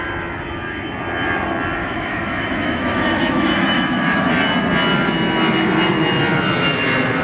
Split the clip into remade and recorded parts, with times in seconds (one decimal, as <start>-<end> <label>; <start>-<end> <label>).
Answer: 0.0-1.8 recorded; 1.8-4.3 remade; 4.3-7.2 recorded